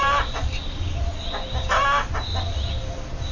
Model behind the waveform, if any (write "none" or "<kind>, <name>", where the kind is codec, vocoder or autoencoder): none